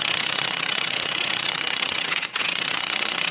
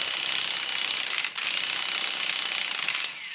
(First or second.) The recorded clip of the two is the second